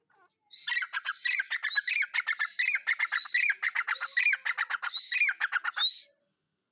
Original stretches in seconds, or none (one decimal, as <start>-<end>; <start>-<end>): 0.0-6.7